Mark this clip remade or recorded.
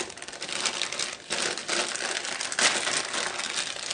recorded